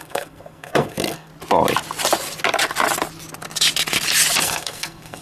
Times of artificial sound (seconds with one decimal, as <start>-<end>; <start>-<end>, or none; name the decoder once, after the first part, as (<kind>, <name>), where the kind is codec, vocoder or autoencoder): 0.0-1.3 (codec, SNAC); 4.4-5.2